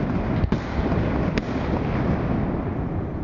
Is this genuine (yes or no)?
yes